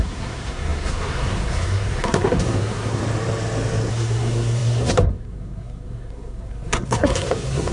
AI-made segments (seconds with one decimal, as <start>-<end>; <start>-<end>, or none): 0.0-3.0; 3.9-7.7